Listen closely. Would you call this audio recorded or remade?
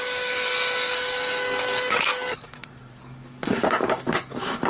remade